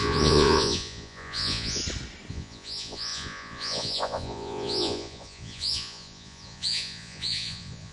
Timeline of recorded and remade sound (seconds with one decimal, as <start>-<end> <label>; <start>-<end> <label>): 0.0-1.8 remade; 1.8-2.3 recorded; 2.3-7.9 remade